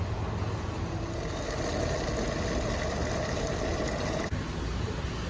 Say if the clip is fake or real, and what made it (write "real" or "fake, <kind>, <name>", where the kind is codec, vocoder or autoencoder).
real